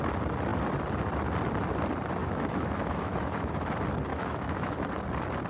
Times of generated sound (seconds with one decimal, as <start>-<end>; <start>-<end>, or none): 2.2-3.6; 4.1-4.8